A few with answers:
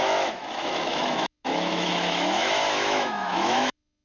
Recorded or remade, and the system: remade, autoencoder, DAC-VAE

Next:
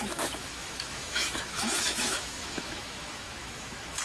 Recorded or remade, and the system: remade, autoencoder, DAC-VAE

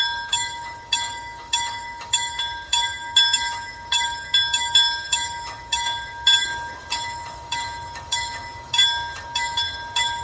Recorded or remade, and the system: remade, autoencoder, DAC-VAE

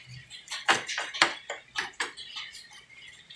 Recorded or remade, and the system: recorded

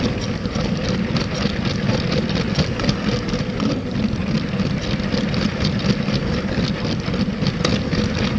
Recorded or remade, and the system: recorded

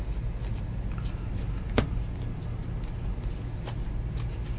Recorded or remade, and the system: recorded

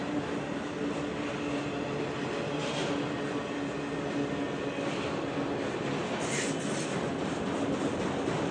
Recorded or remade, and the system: recorded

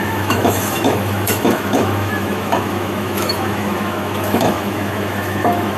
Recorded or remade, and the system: remade, autoencoder, DAC-VAE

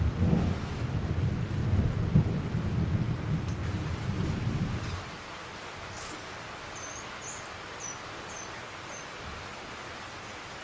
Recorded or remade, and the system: recorded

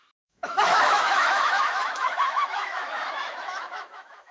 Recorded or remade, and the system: remade, autoencoder, DAC-VAE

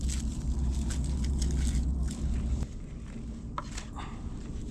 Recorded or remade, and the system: recorded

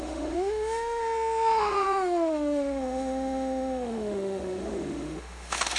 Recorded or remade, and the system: remade, autoencoder, DAC-VAE